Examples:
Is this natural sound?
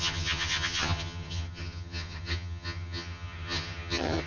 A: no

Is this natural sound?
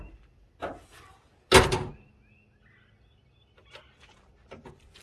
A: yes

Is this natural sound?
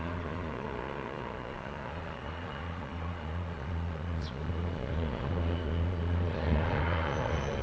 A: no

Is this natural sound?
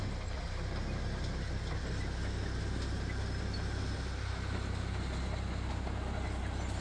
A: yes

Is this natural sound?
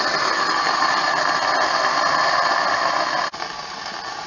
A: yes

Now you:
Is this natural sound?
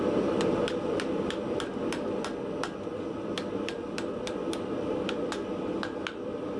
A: yes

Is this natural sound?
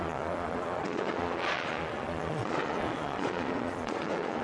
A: no